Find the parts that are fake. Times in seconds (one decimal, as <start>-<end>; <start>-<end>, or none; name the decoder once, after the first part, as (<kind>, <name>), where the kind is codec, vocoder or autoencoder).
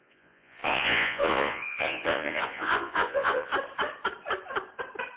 0.0-3.5 (vocoder, Vocos)